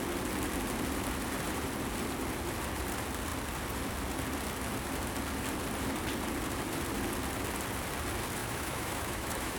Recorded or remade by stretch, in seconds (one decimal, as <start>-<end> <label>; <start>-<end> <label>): 0.0-8.4 recorded; 8.4-9.6 remade